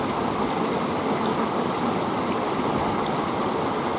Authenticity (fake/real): real